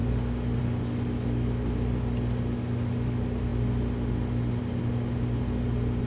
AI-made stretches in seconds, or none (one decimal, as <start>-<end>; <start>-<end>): none